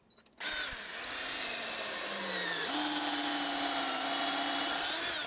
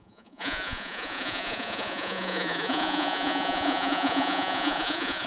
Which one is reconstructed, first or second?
second